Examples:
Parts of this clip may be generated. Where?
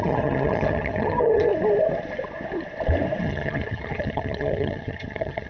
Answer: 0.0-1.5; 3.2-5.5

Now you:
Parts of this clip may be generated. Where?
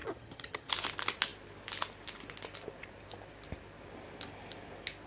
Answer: 0.0-0.7